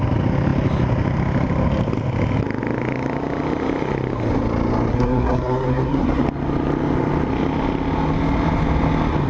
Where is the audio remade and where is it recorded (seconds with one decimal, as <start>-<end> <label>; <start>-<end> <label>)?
0.0-4.9 recorded; 4.9-6.2 remade; 6.2-9.3 recorded

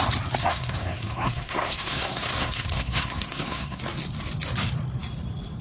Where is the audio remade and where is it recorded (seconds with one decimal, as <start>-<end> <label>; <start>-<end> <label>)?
0.0-0.4 recorded; 0.4-3.8 remade; 3.8-5.6 recorded

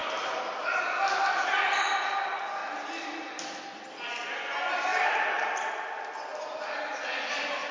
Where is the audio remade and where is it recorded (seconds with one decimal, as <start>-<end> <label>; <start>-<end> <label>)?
0.0-0.6 remade; 0.6-2.6 recorded; 2.6-3.4 remade; 3.4-4.9 recorded; 4.9-5.6 remade; 5.6-7.7 recorded

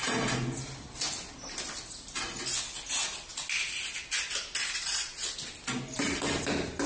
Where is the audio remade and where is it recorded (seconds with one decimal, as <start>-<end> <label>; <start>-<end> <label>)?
0.0-4.6 recorded; 4.6-5.2 remade; 5.2-6.9 recorded

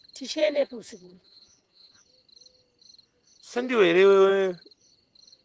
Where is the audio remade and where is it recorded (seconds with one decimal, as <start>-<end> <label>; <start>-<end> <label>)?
0.0-0.4 recorded; 0.4-2.0 remade; 2.0-5.4 recorded